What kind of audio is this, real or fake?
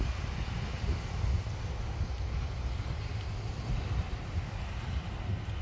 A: real